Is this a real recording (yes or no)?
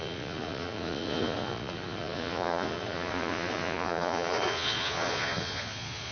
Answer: no